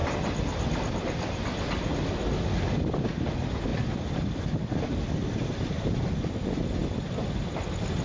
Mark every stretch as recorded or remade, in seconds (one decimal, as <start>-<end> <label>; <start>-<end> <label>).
0.0-8.0 recorded